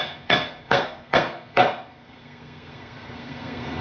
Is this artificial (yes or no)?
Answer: yes